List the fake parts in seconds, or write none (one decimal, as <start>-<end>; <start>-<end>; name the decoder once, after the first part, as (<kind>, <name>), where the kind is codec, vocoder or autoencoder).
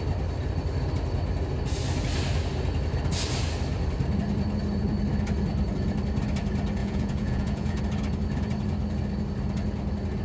6.8-7.8 (vocoder, Vocos)